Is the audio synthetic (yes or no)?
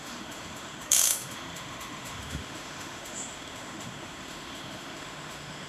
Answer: yes